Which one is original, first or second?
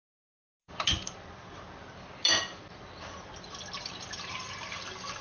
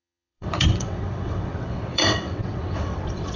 first